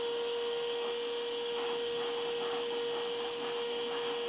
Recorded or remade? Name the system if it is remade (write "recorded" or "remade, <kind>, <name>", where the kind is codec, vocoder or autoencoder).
recorded